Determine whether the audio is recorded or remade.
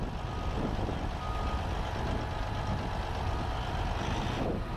recorded